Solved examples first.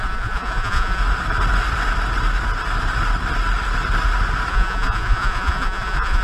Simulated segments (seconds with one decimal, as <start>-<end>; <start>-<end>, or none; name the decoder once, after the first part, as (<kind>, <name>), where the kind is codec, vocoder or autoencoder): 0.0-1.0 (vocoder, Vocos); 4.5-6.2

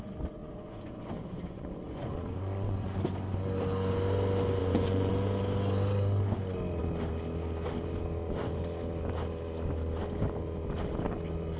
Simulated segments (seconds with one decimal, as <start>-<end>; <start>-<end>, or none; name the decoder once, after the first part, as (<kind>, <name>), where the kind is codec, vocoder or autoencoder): 0.4-3.0 (vocoder, Vocos); 4.6-5.1

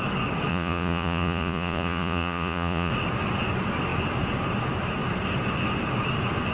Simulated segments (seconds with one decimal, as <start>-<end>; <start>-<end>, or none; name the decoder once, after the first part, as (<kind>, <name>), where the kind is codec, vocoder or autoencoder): 0.5-2.9 (vocoder, Vocos)